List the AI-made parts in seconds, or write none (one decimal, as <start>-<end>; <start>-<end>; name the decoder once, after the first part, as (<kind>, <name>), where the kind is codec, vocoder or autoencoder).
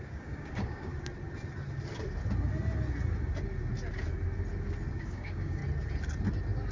0.0-0.9 (codec, DAC); 4.9-5.6